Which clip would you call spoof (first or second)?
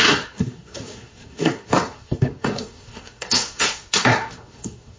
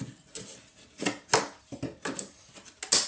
first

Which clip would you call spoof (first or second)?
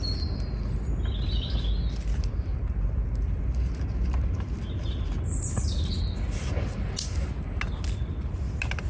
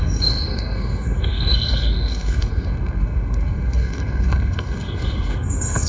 second